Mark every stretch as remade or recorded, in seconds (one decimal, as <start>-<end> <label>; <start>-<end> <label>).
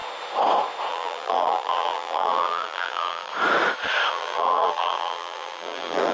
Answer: 0.0-0.9 recorded; 0.9-3.3 remade; 3.3-4.1 recorded; 4.1-6.1 remade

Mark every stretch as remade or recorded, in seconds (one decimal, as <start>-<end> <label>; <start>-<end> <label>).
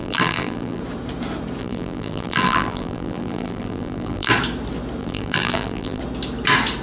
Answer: 0.0-0.8 remade; 0.8-1.6 recorded; 1.6-4.3 remade; 4.3-5.0 recorded; 5.0-6.0 remade; 6.0-6.8 recorded